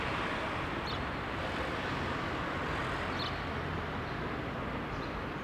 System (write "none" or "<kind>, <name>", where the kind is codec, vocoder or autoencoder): none